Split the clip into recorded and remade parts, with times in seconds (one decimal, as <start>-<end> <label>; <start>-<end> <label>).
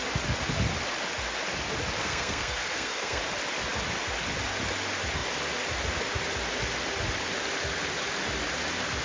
0.0-2.0 recorded; 2.0-3.2 remade; 3.2-9.0 recorded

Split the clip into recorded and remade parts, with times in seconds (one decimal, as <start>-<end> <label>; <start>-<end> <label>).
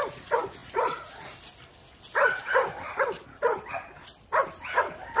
0.0-5.2 recorded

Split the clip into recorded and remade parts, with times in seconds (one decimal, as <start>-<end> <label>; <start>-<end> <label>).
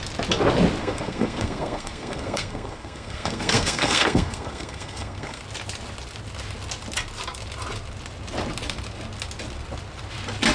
0.0-0.8 recorded; 0.8-5.4 remade; 5.4-10.5 recorded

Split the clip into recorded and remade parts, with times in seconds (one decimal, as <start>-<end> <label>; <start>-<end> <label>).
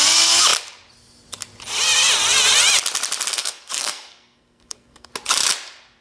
0.0-3.3 recorded; 3.3-5.1 remade; 5.1-6.0 recorded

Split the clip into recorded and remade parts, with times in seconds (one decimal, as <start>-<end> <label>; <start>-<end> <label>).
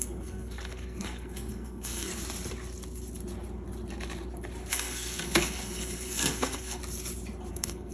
0.0-2.1 remade; 2.1-4.7 recorded; 4.7-6.8 remade; 6.8-7.5 recorded; 7.5-7.9 remade